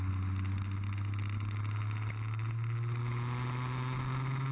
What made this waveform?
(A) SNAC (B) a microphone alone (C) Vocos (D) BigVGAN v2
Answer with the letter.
B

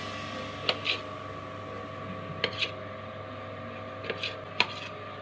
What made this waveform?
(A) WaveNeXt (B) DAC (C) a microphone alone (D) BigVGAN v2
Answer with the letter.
C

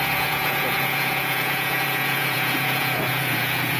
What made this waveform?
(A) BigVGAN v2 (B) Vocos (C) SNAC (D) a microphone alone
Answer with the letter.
B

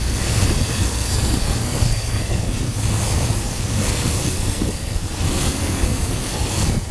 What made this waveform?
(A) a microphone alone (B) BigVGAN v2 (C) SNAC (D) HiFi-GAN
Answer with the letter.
C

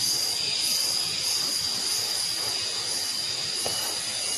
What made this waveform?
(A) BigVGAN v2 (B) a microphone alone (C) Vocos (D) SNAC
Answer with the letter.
B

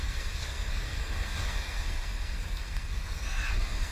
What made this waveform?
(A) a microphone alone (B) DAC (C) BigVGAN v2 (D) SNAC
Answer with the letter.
D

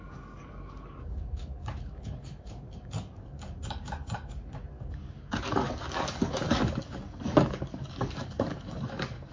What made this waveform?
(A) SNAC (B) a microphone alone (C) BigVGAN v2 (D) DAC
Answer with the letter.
D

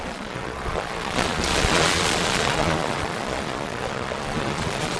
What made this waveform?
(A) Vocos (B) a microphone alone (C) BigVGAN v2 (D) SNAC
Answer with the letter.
A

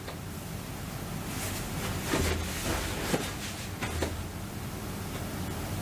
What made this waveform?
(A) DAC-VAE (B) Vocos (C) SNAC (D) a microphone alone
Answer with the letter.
D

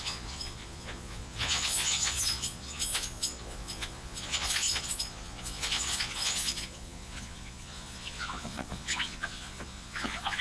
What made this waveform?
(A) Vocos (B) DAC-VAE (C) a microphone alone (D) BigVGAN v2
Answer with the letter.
A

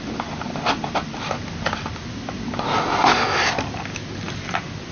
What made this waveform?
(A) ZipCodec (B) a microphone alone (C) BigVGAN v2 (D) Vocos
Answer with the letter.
B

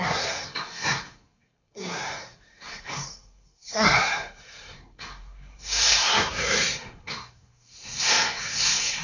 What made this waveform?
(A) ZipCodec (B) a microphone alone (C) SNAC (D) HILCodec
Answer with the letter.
C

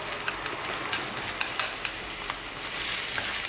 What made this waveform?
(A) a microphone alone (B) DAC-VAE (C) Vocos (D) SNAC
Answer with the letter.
A